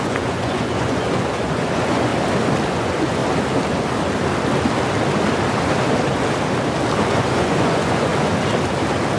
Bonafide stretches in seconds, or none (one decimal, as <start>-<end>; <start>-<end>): 2.1-2.7; 3.2-7.1; 8.1-9.2